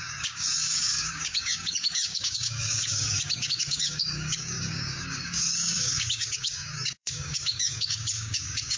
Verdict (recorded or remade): remade